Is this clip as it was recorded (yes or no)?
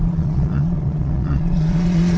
no